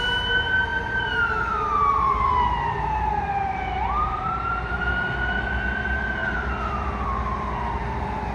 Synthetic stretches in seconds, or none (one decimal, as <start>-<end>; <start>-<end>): 0.7-4.8; 6.2-6.9